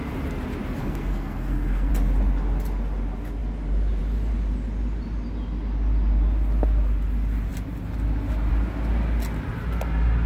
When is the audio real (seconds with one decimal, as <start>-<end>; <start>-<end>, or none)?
0.0-0.8; 1.9-10.3